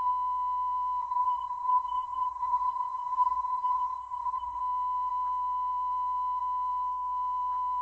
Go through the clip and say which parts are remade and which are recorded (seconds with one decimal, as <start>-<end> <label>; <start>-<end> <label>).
0.0-1.0 recorded; 1.0-4.6 remade; 4.6-7.8 recorded